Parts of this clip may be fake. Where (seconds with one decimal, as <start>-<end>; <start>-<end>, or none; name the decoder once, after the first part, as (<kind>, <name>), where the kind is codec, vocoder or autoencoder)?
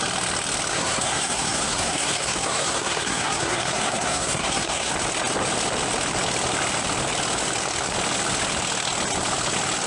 0.7-4.9 (codec, SNAC)